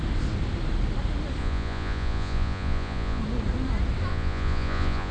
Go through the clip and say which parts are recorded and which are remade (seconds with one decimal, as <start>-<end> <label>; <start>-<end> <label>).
0.0-1.4 recorded; 1.4-3.2 remade; 3.2-4.1 recorded; 4.1-5.1 remade